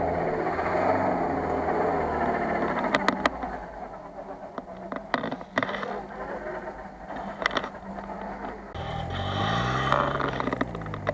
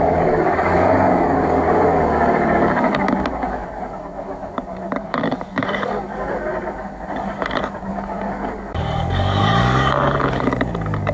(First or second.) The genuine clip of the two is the first